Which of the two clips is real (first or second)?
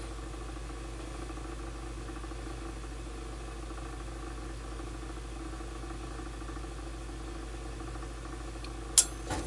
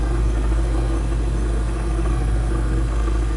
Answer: first